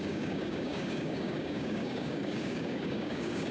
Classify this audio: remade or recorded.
remade